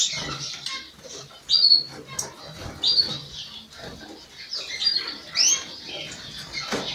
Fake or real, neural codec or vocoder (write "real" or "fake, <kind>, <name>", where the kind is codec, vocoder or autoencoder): real